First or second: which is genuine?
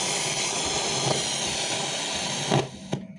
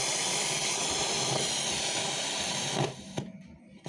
first